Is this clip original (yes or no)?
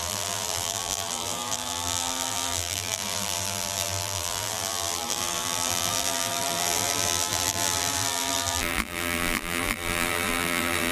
no